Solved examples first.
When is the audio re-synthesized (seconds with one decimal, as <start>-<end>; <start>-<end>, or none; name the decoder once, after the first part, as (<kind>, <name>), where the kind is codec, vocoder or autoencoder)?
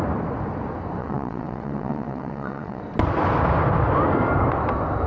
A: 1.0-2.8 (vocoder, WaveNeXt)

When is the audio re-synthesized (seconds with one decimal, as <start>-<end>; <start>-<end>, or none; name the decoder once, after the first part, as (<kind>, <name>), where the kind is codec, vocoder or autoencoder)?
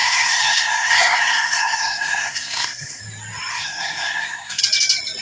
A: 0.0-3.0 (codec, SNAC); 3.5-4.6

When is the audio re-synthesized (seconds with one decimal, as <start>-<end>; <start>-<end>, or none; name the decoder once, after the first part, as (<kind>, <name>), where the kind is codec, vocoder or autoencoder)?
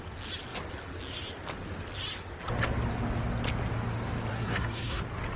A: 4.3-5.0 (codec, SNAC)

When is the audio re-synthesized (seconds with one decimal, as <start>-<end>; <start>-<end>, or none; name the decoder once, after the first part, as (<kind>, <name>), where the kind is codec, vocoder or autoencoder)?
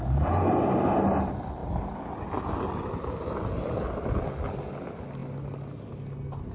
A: none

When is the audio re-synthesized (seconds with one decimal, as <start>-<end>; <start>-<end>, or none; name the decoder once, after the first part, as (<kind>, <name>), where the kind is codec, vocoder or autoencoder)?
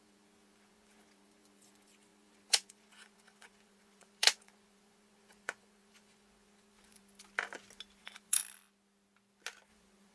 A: 0.0-7.0 (vocoder, Vocos); 8.0-8.4; 9.7-10.1